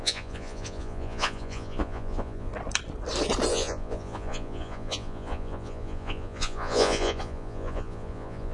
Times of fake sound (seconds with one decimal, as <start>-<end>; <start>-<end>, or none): 0.0-2.5; 3.5-8.5